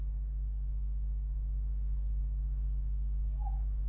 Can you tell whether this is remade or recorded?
remade